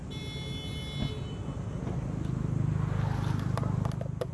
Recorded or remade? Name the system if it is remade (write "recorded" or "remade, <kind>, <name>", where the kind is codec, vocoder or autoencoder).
recorded